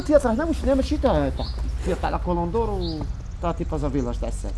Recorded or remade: recorded